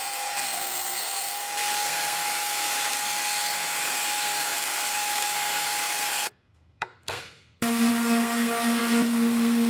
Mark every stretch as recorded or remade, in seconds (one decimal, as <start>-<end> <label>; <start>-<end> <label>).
0.0-9.7 remade